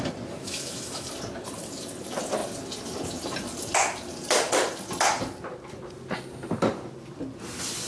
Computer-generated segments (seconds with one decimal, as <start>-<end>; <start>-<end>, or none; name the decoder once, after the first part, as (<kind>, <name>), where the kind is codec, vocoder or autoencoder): 0.4-1.1 (autoencoder, DAC-VAE)